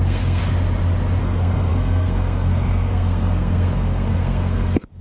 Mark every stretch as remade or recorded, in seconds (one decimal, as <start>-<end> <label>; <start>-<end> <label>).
0.0-0.4 remade; 0.4-1.2 recorded; 1.2-5.0 remade